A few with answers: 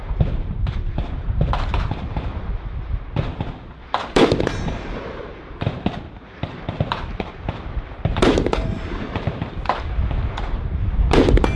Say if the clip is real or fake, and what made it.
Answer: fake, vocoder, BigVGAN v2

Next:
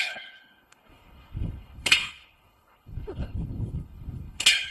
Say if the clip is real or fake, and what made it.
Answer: fake, codec, HILCodec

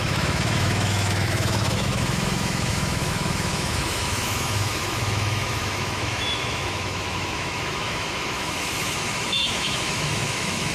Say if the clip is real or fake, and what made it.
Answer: fake, autoencoder, DAC-VAE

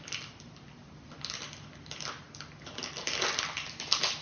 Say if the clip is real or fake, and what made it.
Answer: real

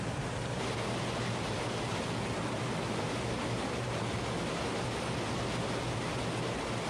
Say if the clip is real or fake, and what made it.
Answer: real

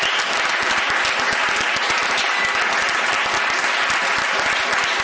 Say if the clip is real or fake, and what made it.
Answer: real